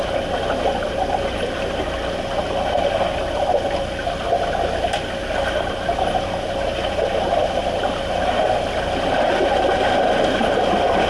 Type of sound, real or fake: real